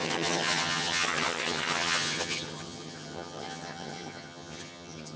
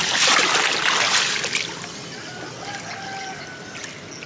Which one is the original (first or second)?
second